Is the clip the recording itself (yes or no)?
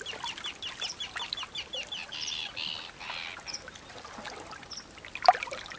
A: yes